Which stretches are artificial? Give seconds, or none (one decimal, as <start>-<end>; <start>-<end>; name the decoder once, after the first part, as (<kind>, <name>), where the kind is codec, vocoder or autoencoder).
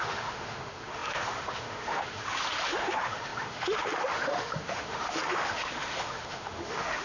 0.0-7.0 (autoencoder, DAC-VAE)